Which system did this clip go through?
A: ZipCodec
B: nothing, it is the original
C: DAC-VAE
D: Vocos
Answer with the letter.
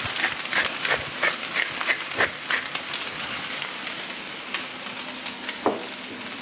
B